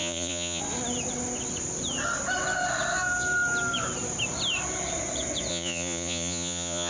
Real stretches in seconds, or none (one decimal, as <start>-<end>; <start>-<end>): 0.6-5.5